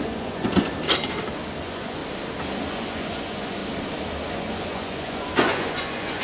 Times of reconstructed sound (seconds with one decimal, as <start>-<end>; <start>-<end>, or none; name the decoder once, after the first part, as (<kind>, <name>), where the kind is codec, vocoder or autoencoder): 0.0-0.7 (vocoder, Vocos); 1.6-2.0; 2.7-3.6; 4.3-6.2